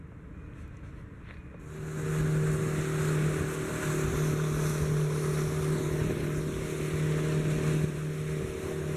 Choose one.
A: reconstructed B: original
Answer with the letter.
B